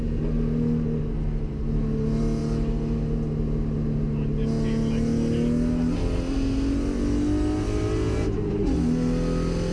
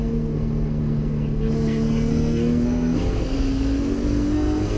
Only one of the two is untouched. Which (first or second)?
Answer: first